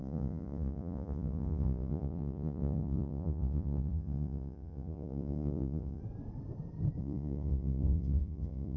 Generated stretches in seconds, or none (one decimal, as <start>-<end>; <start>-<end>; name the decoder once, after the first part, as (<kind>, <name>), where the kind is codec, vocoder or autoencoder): 0.0-6.0 (vocoder, Vocos); 7.0-8.8